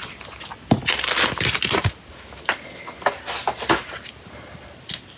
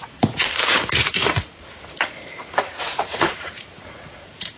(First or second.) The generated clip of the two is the second